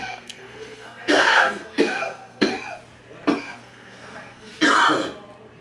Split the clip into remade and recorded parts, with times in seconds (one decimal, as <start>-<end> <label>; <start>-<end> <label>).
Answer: 0.0-2.5 remade; 2.5-3.4 recorded; 3.4-4.5 remade; 4.5-5.6 recorded